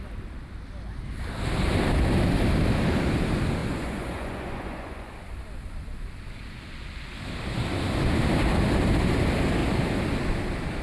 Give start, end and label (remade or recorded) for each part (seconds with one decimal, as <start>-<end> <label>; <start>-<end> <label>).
0.0-3.6 recorded; 3.6-5.1 remade; 5.1-10.8 recorded